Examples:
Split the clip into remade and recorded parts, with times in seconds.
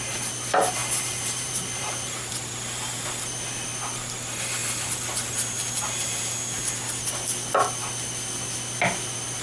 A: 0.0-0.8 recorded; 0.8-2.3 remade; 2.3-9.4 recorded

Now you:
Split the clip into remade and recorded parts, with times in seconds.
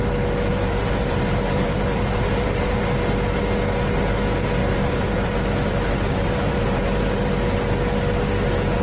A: 0.0-0.5 recorded; 0.5-2.8 remade; 2.8-4.6 recorded; 4.6-7.3 remade; 7.3-8.8 recorded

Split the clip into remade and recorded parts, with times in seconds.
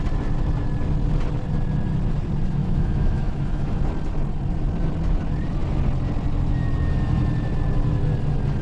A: 0.0-2.6 recorded; 2.6-3.8 remade; 3.8-8.6 recorded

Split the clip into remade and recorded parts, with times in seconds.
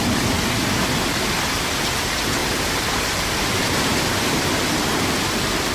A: 0.0-2.4 recorded; 2.4-4.4 remade; 4.4-5.7 recorded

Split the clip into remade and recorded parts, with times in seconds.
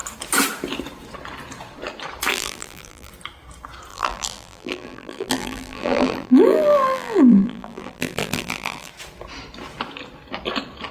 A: 0.0-2.3 recorded; 2.3-3.1 remade; 3.1-3.9 recorded; 3.9-8.9 remade; 8.9-10.9 recorded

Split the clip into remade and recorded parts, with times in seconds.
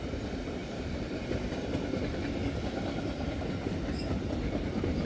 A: 0.0-0.6 recorded; 0.6-1.5 remade; 1.5-5.1 recorded